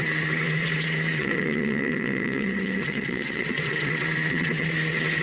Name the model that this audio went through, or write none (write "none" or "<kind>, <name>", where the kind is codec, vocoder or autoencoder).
vocoder, WaveNeXt